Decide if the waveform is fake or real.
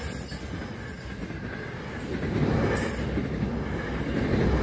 real